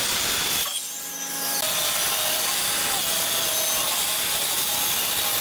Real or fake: real